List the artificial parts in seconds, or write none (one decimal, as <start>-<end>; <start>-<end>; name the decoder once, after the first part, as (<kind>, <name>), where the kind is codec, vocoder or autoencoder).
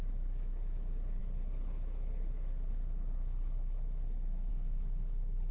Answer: 0.0-5.5 (codec, HILCodec)